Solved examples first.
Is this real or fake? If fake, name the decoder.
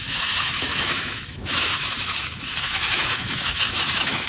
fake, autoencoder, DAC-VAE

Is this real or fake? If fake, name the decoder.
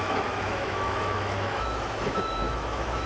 fake, autoencoder, DAC-VAE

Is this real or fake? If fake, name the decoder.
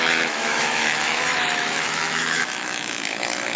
fake, autoencoder, DAC-VAE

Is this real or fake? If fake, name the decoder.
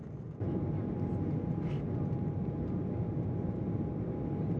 real